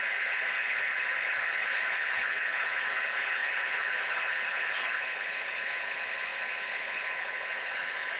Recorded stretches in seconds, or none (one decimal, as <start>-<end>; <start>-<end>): none